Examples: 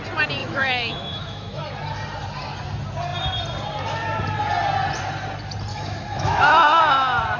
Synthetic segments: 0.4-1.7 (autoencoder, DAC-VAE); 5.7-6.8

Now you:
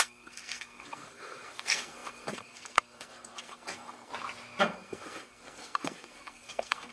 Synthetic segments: 0.0-4.1 (codec, SNAC); 4.6-6.9